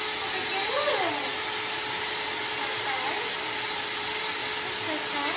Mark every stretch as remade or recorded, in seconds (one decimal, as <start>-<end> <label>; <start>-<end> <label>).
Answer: 0.0-2.7 recorded; 2.7-4.4 remade; 4.4-5.4 recorded